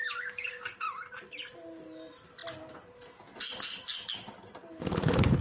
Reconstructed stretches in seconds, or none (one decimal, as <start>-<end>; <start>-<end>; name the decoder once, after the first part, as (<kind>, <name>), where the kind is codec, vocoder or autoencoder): 0.0-0.7 (codec, DAC)